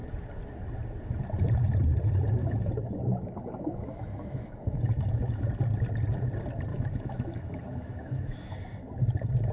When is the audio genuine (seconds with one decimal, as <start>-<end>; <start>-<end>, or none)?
0.0-2.4; 5.5-6.7; 8.5-9.5